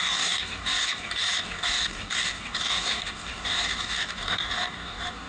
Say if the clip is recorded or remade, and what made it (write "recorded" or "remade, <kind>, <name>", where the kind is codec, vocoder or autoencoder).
remade, codec, DAC